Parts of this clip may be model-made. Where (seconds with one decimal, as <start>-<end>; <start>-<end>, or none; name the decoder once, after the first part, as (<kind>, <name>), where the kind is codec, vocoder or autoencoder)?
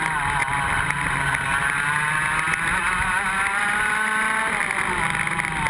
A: none